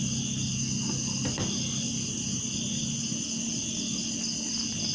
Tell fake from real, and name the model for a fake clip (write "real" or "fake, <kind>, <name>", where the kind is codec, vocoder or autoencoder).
real